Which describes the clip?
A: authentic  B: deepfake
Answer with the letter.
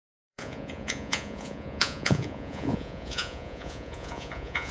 B